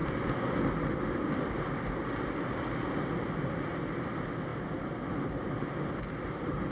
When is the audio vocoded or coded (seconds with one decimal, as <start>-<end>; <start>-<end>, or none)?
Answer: none